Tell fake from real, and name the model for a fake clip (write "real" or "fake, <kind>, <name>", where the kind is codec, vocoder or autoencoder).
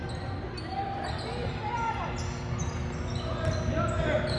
real